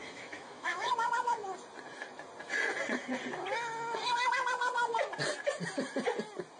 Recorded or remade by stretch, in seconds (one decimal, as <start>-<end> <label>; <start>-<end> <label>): 0.0-0.9 remade; 0.9-6.6 recorded